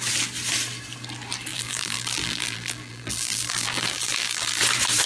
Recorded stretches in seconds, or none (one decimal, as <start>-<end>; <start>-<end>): 0.0-1.5; 4.6-5.1